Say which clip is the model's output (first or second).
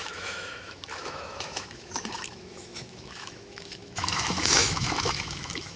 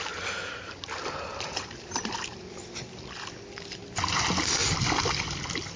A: first